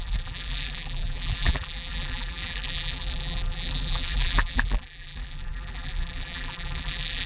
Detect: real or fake fake